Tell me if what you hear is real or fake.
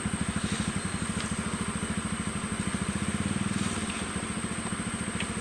real